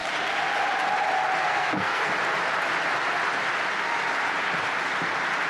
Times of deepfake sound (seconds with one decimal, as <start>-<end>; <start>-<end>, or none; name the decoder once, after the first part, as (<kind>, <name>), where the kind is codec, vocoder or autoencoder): 1.4-2.1 (codec, SNAC)